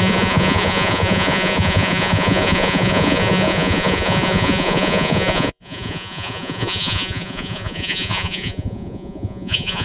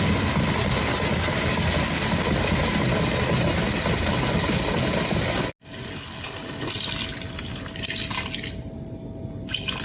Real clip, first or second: second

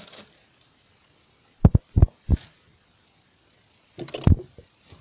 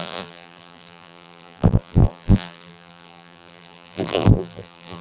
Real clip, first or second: first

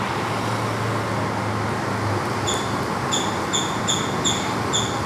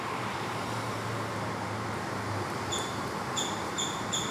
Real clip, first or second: first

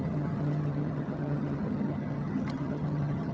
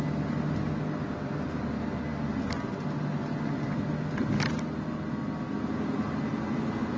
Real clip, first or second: second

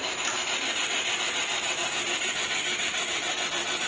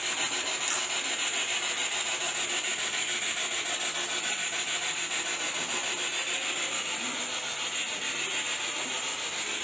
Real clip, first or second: second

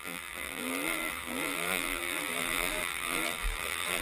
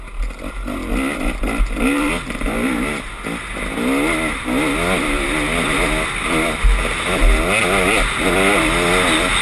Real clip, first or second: second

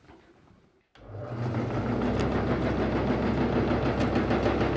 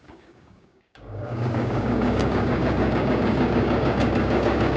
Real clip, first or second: first